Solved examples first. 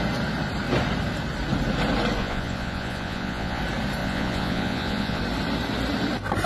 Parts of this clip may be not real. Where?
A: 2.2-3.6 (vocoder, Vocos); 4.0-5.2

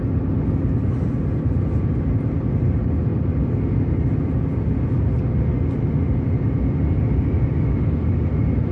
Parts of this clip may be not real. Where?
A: none